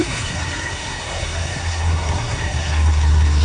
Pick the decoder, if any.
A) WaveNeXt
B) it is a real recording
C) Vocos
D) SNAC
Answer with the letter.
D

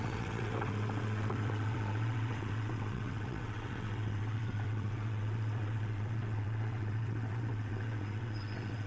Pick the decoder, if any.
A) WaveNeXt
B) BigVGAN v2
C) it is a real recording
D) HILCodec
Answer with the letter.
A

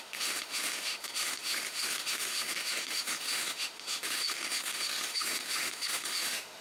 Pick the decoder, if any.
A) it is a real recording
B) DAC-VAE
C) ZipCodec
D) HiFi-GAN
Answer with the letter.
B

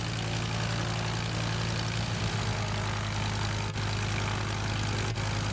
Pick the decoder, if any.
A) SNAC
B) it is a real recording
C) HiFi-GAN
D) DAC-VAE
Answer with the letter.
B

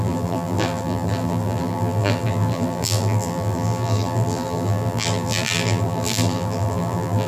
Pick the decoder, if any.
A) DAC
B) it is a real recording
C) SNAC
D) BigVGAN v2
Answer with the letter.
D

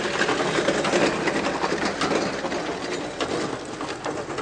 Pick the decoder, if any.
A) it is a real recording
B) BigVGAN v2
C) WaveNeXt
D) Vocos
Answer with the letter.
A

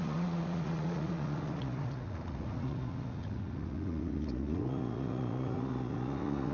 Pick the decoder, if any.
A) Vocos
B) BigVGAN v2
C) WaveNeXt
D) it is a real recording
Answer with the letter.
A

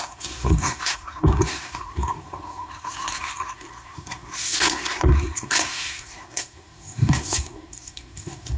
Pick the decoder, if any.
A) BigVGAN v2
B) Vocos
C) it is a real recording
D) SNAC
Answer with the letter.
D